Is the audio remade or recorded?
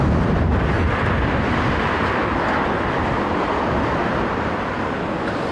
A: recorded